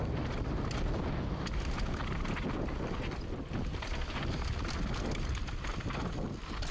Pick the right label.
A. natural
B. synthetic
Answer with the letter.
A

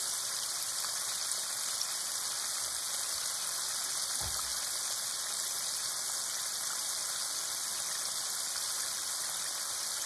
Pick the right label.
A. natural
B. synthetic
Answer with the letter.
A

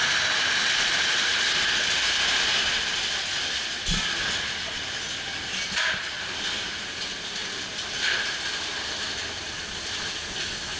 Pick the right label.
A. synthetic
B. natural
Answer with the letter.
B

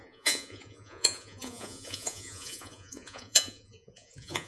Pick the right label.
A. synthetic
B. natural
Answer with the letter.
A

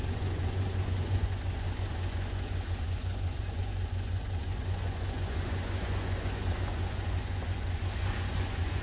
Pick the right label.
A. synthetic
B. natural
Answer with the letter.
A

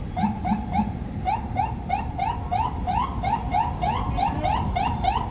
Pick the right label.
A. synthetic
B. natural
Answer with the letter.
B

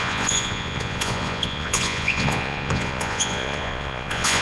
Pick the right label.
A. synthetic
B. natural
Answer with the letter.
A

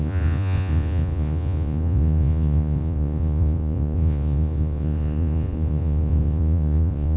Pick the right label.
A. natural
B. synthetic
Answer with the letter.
B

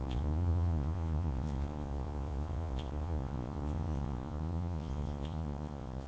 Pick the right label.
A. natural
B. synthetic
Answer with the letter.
B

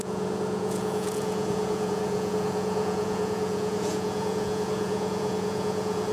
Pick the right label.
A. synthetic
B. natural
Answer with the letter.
A